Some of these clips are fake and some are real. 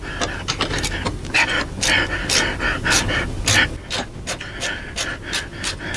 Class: real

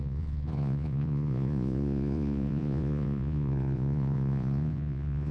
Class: fake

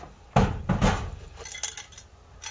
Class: real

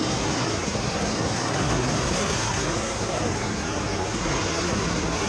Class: fake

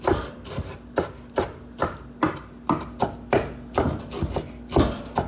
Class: real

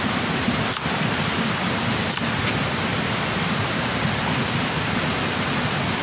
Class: real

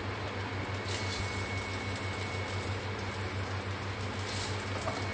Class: real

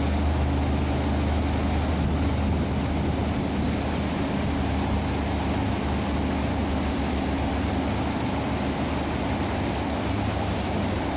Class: real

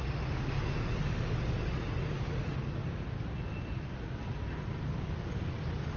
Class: real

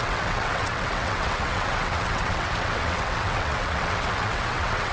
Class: fake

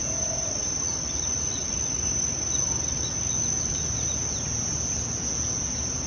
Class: real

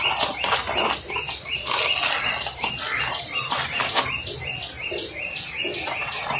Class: real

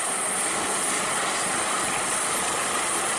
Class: real